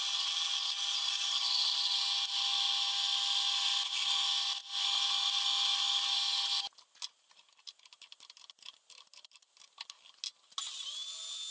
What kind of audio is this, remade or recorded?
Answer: recorded